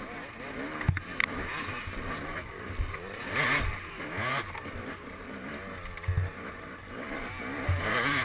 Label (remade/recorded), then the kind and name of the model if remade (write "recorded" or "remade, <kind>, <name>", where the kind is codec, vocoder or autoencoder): recorded